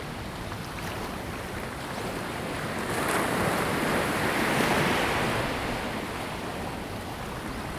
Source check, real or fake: real